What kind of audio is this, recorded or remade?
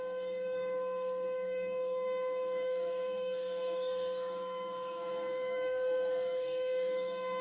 remade